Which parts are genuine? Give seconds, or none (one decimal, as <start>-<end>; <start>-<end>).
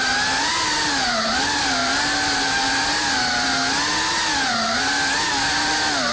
0.0-6.1